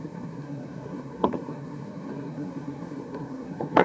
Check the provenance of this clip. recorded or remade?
remade